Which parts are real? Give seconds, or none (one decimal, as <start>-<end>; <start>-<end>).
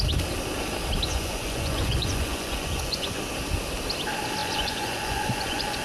0.0-1.1; 3.2-4.4